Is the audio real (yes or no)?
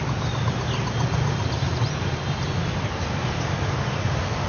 yes